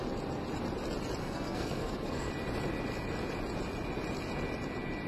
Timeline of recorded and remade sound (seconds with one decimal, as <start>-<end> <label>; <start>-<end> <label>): 0.0-1.2 recorded; 1.2-2.3 remade; 2.3-5.1 recorded